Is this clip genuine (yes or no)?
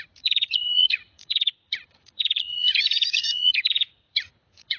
no